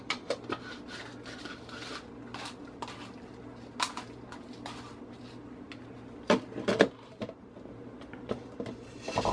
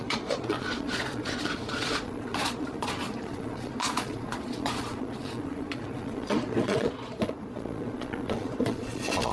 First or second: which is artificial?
second